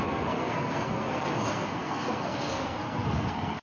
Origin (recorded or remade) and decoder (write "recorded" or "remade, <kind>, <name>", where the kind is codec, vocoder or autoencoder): remade, codec, SNAC